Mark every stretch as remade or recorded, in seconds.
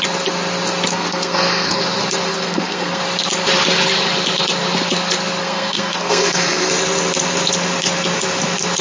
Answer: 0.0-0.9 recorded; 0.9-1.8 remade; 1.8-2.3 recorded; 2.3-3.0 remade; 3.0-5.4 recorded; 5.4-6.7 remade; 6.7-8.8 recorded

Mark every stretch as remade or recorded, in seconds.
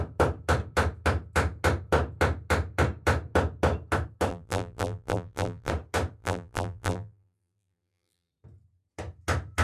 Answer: 0.0-4.3 recorded; 4.3-5.7 remade; 5.7-6.2 recorded; 6.2-8.3 remade; 8.3-9.6 recorded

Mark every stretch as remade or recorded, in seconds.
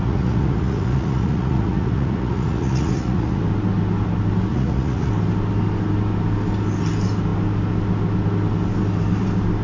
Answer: 0.0-3.4 remade; 3.4-4.5 recorded; 4.5-5.1 remade; 5.1-9.6 recorded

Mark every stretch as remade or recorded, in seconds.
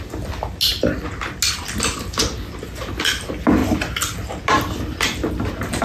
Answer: 0.0-5.8 recorded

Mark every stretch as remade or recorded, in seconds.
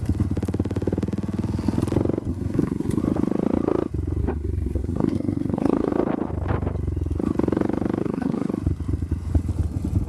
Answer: 0.0-2.3 recorded; 2.3-3.0 remade; 3.0-4.2 recorded; 4.2-5.9 remade; 5.9-8.0 recorded; 8.0-8.5 remade; 8.5-10.1 recorded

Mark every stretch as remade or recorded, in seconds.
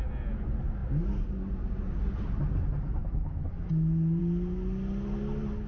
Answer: 0.0-5.7 recorded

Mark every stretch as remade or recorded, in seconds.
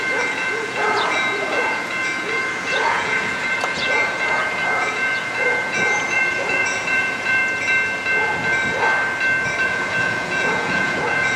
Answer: 0.0-7.4 remade; 7.4-9.6 recorded; 9.6-11.4 remade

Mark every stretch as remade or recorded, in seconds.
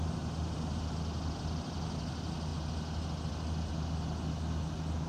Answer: 0.0-5.1 recorded